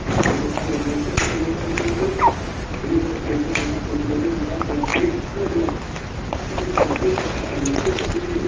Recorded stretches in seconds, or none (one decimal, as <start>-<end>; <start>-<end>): 0.0-8.5